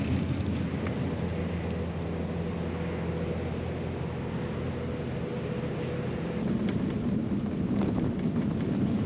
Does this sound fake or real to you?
real